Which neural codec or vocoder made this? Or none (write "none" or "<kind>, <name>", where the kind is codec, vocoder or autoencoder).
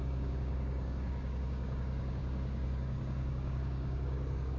codec, DAC